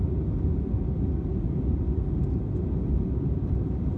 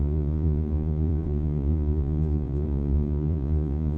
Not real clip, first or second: second